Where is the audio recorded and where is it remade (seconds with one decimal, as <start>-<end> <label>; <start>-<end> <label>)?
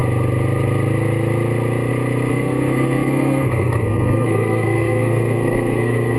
0.0-2.3 recorded; 2.3-6.2 remade